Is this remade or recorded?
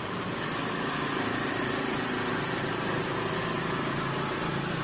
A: recorded